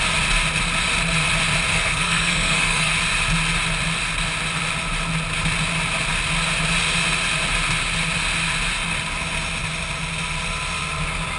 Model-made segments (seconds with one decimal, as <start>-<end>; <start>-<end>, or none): 1.7-2.9